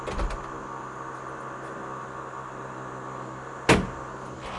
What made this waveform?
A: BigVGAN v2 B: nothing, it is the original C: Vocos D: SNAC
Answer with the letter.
B